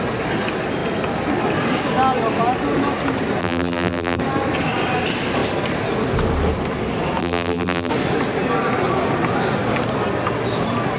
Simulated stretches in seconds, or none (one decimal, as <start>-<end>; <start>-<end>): 3.4-4.2; 7.2-7.9